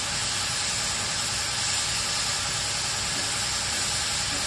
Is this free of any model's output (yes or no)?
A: yes